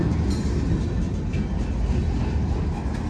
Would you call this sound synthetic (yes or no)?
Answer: no